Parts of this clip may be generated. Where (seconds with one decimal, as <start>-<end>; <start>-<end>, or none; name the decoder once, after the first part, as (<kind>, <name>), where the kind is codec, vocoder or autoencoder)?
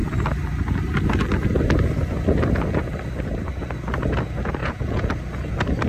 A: 4.6-5.1 (vocoder, Vocos)